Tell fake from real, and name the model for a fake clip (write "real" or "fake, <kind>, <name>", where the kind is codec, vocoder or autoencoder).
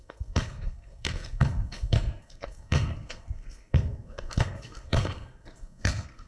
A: fake, codec, SNAC